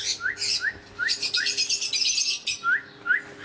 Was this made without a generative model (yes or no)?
yes